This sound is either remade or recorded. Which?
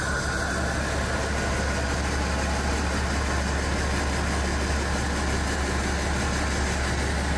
recorded